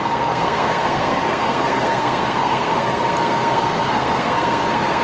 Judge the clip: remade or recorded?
remade